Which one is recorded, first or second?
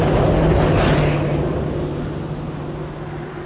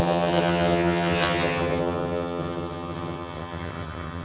first